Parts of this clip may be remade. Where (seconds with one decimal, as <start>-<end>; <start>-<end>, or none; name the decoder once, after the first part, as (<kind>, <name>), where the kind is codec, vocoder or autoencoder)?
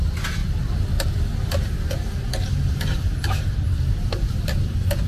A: none